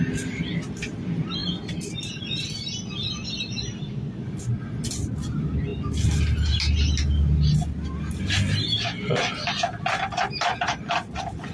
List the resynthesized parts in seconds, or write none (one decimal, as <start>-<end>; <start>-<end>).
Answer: none